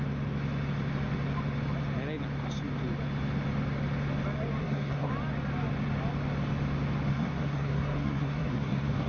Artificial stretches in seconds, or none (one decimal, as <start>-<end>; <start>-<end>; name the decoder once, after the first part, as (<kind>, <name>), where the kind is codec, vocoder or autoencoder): 4.6-5.1 (codec, SNAC); 7.1-9.1